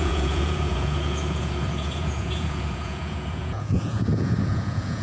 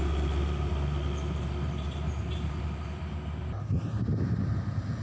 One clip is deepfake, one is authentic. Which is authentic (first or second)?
second